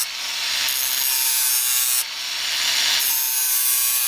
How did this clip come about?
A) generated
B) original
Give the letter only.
B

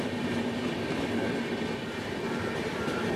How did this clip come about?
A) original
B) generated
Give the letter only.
A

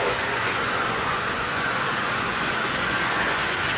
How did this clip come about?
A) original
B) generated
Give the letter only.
B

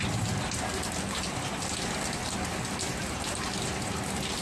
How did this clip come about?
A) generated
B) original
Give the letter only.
B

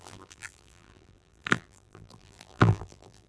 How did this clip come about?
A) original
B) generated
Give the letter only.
B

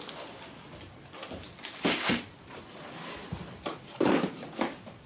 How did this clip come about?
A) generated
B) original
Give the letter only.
B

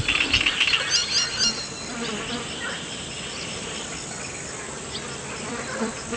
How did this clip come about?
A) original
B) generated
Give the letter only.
A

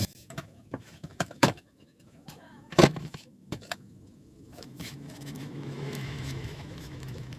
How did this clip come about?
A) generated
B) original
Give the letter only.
A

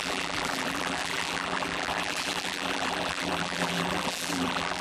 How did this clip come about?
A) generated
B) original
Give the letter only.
A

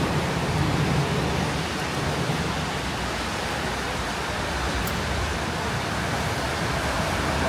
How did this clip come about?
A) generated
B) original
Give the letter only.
B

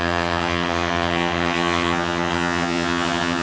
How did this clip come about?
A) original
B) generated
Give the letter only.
B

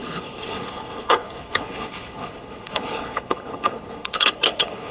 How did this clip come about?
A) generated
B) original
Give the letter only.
A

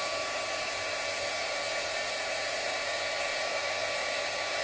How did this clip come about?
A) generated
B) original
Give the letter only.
B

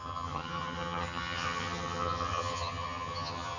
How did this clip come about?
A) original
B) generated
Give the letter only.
B